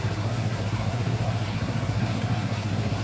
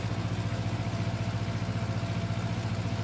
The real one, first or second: second